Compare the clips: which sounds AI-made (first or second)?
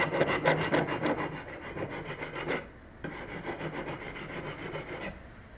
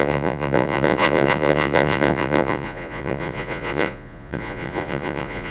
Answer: second